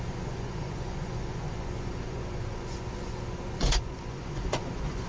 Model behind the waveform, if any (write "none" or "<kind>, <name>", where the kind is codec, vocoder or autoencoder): vocoder, Vocos